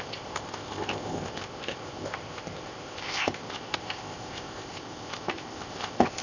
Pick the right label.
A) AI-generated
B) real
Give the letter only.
A